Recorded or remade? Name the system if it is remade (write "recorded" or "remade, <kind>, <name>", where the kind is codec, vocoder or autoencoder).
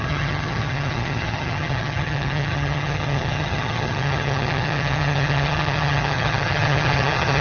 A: remade, vocoder, HiFi-GAN